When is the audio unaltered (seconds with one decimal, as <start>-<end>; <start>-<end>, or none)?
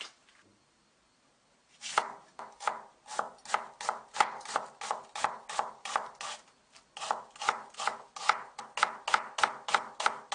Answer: 0.0-10.3